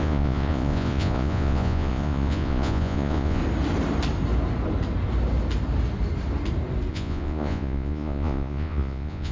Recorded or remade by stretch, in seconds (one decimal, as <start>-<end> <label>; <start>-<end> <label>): 0.0-3.4 remade; 3.4-6.9 recorded; 6.9-9.3 remade